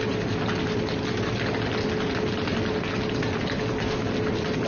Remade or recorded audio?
recorded